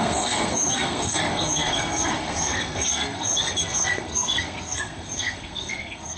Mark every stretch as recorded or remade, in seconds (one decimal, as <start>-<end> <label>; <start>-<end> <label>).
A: 0.0-6.2 remade